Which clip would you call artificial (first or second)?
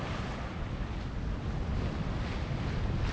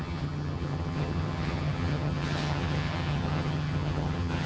second